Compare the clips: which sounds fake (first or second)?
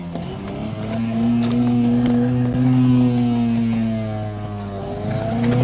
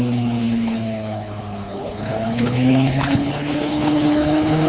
second